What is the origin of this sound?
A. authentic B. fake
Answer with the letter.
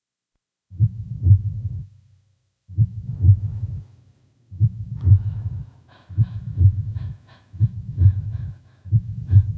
B